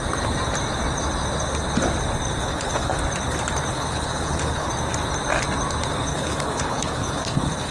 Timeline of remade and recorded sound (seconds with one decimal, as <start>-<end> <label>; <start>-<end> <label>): 0.0-2.4 recorded; 2.4-3.0 remade; 3.0-3.7 recorded; 3.7-4.7 remade; 4.7-6.1 recorded; 6.1-7.7 remade